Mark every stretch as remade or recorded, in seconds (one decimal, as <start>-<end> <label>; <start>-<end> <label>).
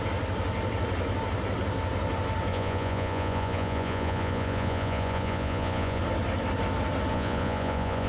0.0-2.5 recorded; 2.5-6.0 remade; 6.0-7.1 recorded; 7.1-8.1 remade